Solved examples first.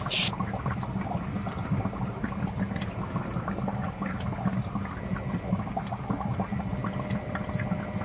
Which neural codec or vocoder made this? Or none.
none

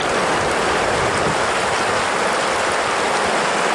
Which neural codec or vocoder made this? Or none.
none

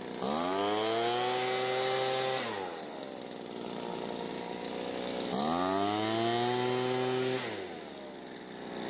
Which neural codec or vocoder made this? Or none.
none